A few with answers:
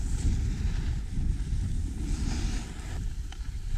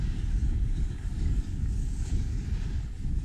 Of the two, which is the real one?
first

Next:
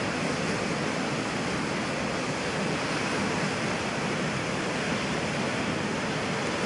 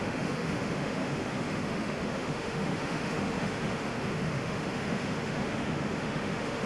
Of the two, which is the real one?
first